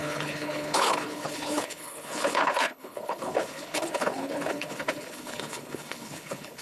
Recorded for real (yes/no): no